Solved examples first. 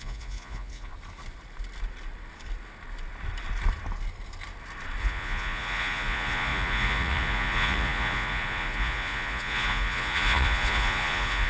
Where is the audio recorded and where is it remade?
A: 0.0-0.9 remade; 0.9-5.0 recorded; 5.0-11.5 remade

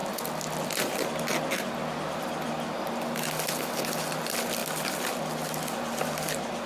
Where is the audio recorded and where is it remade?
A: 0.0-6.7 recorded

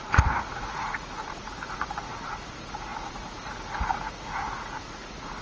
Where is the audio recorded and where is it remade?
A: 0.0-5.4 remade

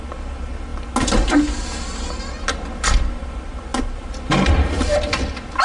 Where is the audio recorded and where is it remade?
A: 0.0-5.6 recorded

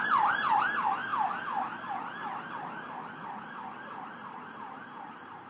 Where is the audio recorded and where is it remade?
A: 0.0-1.1 remade; 1.1-2.5 recorded; 2.5-5.5 remade

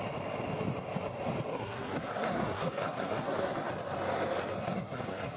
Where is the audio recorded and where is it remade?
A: 0.0-1.5 recorded; 1.5-3.7 remade; 3.7-4.6 recorded; 4.6-5.4 remade

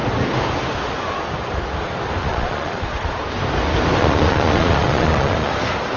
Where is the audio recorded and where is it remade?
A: 0.0-2.2 recorded; 2.2-3.2 remade; 3.2-4.0 recorded; 4.0-5.5 remade; 5.5-6.0 recorded

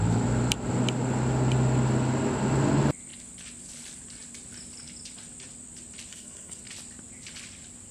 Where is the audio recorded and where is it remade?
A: 0.0-6.1 recorded; 6.1-6.6 remade; 6.6-7.9 recorded